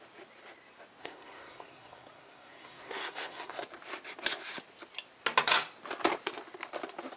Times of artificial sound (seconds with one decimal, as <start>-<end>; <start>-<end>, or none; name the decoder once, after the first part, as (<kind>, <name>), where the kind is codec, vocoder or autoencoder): 1.0-3.6 (codec, SNAC)